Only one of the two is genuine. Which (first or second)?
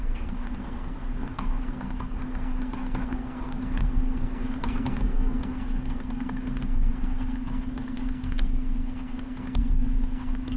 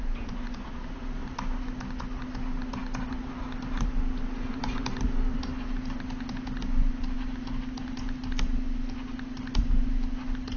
second